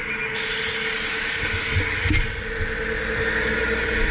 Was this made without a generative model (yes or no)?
yes